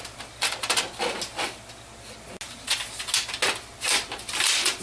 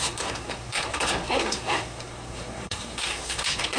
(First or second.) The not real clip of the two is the second